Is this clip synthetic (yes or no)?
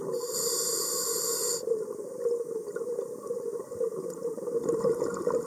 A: yes